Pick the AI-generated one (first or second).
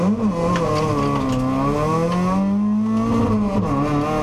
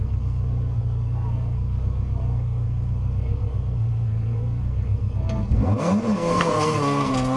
second